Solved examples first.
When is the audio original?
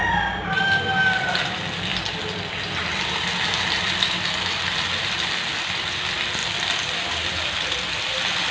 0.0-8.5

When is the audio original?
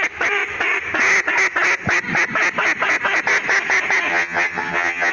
0.0-4.1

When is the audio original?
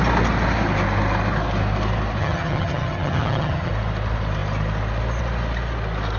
0.0-2.2; 3.7-6.2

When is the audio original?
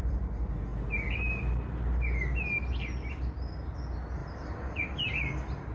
0.0-5.7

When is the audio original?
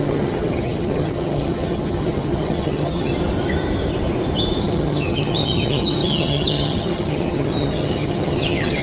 3.1-4.6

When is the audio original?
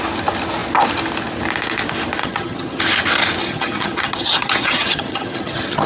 0.0-2.2; 2.8-3.4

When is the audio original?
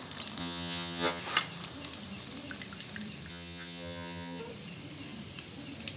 0.0-0.4; 1.2-3.3; 4.4-6.0